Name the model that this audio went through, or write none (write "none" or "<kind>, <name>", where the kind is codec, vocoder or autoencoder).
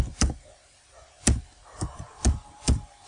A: none